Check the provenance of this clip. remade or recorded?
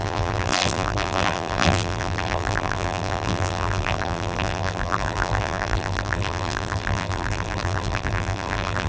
remade